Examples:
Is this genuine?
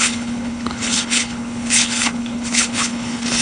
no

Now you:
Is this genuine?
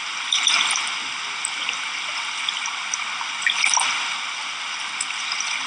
yes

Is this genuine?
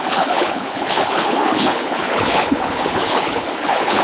no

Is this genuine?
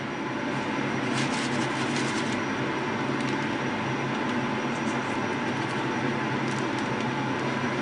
yes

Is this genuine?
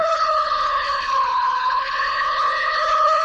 no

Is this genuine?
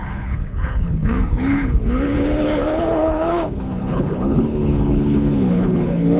no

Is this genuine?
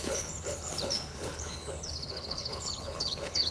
no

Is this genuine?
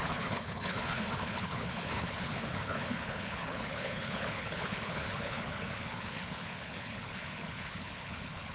no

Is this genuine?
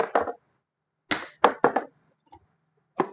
yes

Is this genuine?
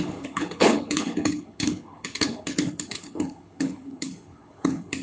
no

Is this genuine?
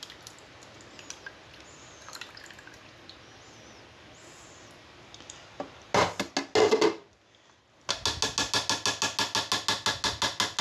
yes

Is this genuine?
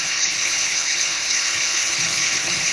no